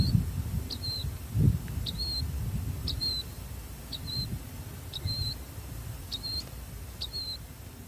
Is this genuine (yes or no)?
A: yes